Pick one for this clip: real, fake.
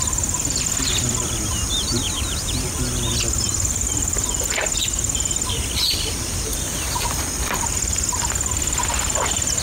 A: fake